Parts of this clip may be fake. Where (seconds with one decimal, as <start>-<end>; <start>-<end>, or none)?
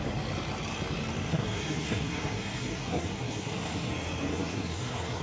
1.3-3.9; 4.3-5.2